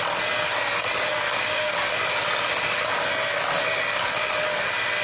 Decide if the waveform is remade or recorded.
recorded